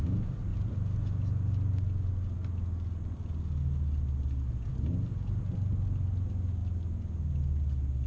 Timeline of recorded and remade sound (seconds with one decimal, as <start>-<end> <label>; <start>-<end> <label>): 0.0-8.1 recorded